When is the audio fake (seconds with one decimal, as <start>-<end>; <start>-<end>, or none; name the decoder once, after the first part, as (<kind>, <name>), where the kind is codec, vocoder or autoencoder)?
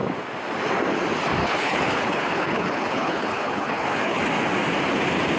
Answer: 1.4-4.2 (codec, HILCodec)